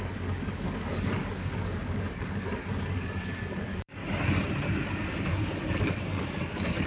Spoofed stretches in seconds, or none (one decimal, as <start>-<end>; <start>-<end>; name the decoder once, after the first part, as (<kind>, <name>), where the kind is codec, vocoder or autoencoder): 0.0-4.0 (codec, DAC); 5.0-6.9